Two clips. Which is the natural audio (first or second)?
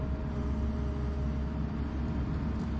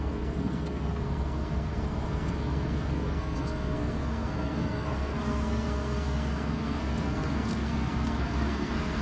first